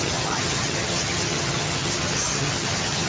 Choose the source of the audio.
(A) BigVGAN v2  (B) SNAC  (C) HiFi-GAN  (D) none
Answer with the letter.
C